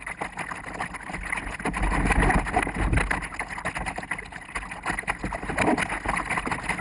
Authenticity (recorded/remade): recorded